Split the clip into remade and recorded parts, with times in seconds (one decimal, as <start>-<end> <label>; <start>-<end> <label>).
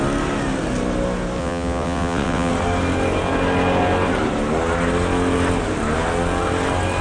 0.0-1.4 recorded; 1.4-2.5 remade; 2.5-7.0 recorded